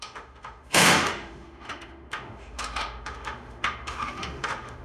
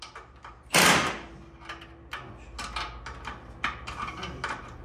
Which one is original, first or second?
second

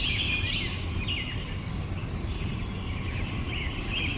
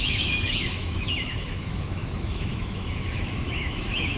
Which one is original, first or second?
first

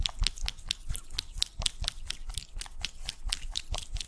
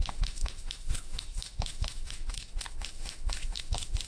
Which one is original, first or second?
first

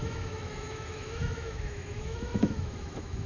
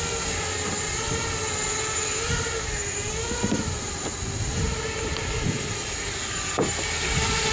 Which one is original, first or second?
second